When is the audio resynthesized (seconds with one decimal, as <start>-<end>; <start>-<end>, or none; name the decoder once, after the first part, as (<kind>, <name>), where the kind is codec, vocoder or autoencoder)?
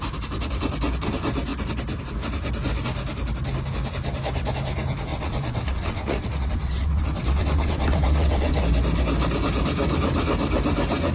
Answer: 5.1-8.6 (vocoder, WaveNeXt)